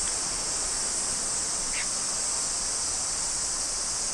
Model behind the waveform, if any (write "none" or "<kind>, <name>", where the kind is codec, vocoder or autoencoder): none